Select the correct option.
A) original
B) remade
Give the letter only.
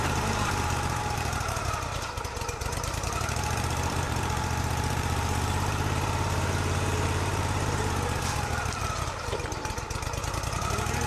B